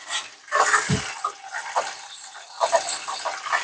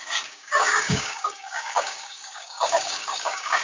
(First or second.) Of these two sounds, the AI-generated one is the second